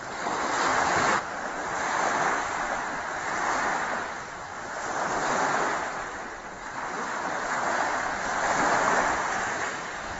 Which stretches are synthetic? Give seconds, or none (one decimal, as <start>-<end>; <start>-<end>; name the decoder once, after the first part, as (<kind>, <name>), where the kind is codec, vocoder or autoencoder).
none